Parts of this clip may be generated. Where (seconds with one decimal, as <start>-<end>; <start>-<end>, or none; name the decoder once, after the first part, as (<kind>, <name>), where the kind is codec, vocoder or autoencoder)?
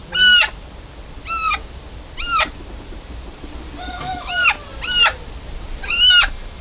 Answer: 4.0-4.4 (autoencoder, DAC-VAE); 6.1-6.6